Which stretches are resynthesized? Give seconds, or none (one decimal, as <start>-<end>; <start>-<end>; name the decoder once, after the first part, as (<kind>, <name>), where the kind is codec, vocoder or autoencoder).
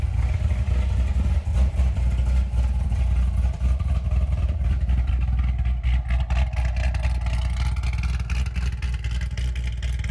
1.5-5.1 (vocoder, BigVGAN v2)